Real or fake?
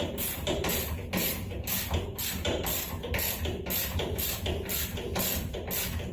real